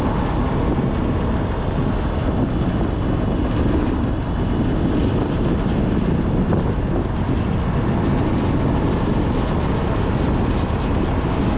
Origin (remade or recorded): recorded